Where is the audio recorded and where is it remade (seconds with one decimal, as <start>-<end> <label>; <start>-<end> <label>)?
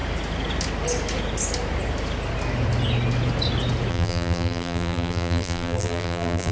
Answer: 0.0-3.9 recorded; 3.9-6.5 remade